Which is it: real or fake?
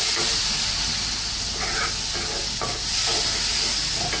real